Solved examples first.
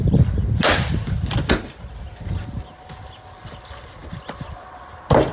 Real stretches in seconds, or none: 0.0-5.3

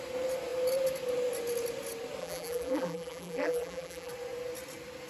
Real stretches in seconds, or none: 0.0-2.2; 4.1-5.1

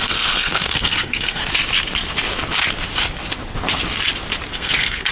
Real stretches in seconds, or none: 1.4-4.5

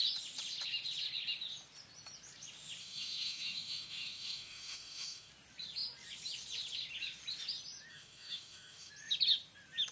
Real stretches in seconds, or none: 0.0-2.8; 5.3-7.9; 8.9-9.9

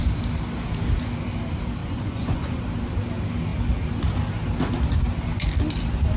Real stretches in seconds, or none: 0.0-1.8; 2.6-6.2

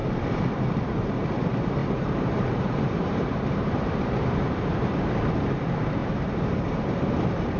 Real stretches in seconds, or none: 0.0-1.8; 5.3-6.0; 6.9-7.6